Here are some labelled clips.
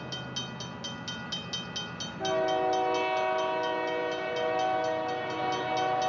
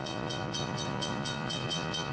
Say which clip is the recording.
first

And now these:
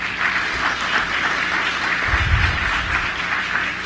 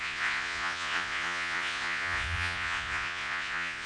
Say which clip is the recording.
first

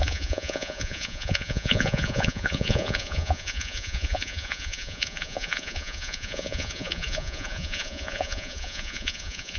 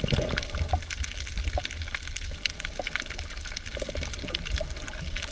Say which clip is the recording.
second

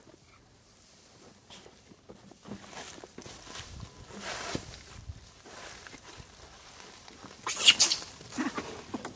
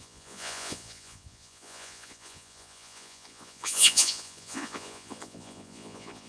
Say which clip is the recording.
first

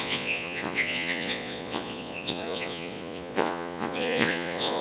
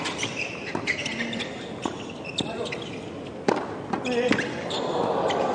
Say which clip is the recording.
second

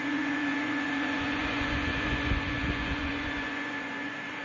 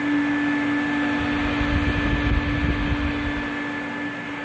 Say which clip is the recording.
second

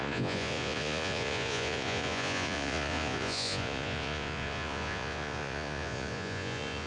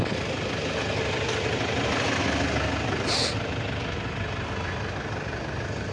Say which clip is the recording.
second